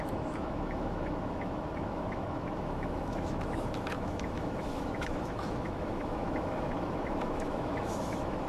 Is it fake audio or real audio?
fake